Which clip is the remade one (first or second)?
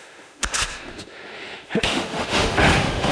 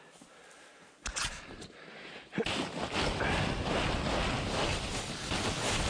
first